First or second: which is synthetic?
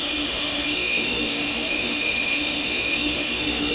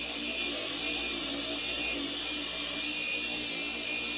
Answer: first